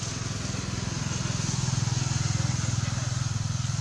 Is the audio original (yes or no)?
yes